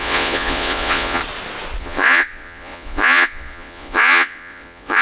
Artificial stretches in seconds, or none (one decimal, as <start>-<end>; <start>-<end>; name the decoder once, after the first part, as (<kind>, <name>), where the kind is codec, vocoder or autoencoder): 0.0-1.2 (vocoder, Vocos); 1.8-5.0